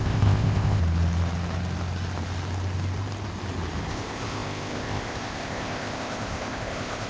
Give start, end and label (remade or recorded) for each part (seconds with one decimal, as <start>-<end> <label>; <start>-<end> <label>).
0.0-0.8 remade; 0.8-3.9 recorded; 3.9-7.1 remade